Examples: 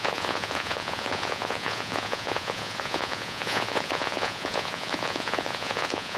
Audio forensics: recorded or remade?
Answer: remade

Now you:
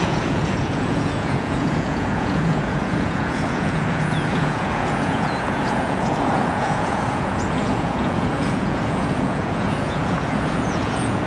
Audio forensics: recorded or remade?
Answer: remade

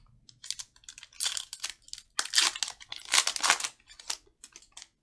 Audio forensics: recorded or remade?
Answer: recorded